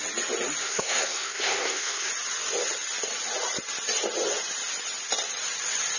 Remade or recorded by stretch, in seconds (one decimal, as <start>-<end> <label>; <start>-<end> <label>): 0.0-0.6 recorded; 0.6-2.1 remade; 2.1-6.0 recorded